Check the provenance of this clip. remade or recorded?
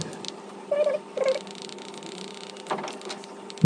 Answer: recorded